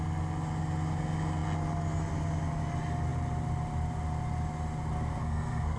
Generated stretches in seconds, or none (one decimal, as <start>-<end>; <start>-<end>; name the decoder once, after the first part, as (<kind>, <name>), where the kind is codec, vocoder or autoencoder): 5.2-5.8 (codec, SNAC)